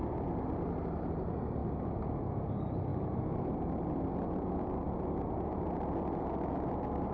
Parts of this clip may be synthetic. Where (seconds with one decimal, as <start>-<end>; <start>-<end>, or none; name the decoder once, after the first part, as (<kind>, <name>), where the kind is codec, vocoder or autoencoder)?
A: none